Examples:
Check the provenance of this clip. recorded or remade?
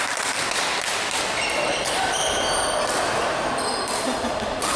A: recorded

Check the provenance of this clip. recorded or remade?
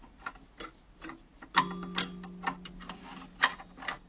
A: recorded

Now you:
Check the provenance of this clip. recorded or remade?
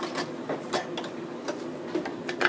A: recorded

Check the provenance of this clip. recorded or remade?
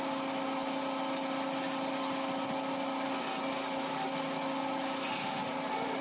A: recorded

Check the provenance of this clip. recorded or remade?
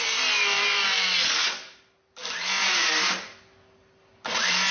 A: recorded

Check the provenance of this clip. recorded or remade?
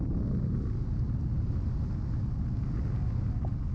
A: recorded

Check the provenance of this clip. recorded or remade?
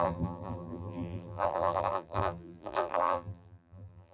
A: remade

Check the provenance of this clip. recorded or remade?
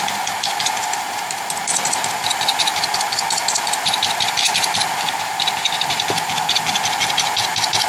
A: recorded